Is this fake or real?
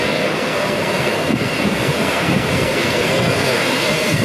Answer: fake